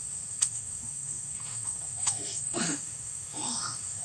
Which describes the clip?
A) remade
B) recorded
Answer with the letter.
A